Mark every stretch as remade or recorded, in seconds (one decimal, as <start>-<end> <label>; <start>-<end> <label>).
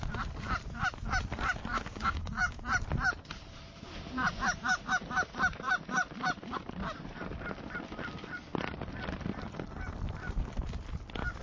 0.0-1.7 recorded; 1.7-2.6 remade; 2.6-11.4 recorded